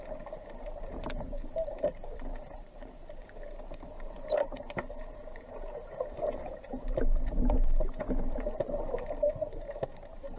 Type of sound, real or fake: fake